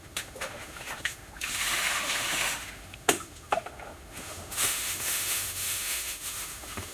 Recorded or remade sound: remade